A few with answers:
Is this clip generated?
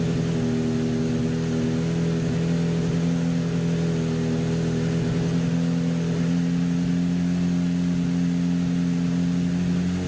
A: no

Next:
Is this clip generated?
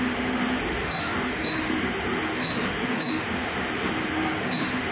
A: yes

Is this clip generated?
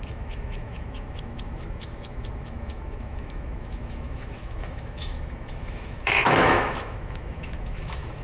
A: yes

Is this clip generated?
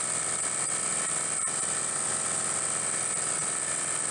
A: no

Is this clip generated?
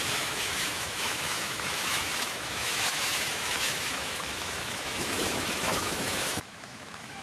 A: yes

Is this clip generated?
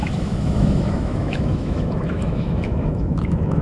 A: yes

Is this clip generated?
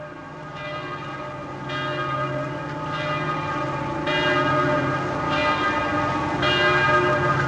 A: no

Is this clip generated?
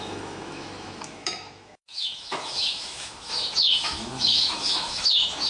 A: yes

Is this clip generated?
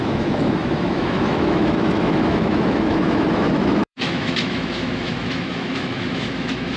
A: yes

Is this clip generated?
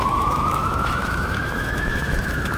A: yes